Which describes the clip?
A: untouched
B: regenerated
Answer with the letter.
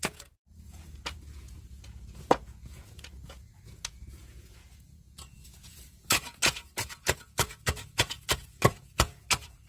B